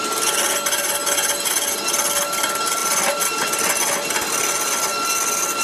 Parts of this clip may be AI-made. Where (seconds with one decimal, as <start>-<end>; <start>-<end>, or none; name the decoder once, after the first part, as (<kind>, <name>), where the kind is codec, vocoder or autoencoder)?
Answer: none